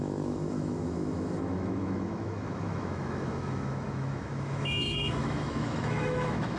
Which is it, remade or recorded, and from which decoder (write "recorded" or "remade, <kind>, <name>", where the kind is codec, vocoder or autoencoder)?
remade, autoencoder, DAC-VAE